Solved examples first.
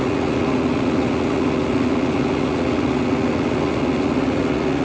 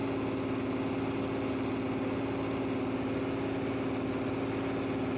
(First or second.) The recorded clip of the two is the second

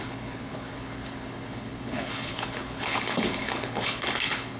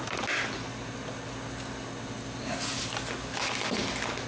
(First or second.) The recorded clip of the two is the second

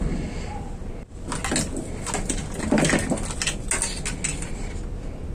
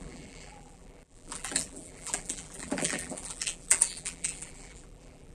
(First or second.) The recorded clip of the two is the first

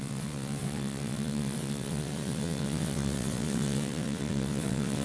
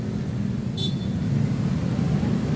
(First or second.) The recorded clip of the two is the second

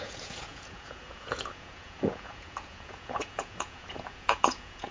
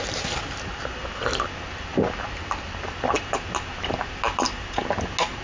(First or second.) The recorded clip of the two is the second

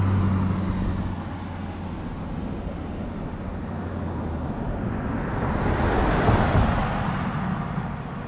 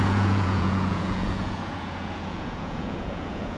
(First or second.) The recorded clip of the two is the first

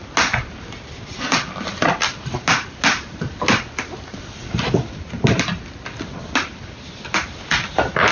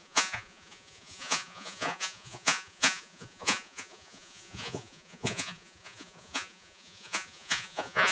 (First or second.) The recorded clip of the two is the first